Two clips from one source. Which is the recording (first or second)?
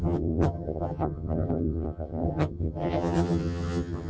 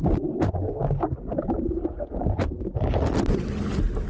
second